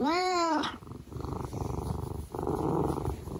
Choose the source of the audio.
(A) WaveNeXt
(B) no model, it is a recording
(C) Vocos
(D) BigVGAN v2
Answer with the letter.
D